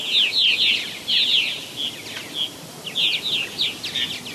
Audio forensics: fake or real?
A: real